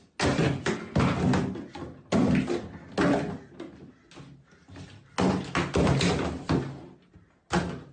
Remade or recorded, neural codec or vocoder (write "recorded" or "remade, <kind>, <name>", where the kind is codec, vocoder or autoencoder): recorded